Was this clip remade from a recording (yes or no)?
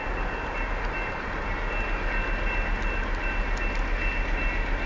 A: no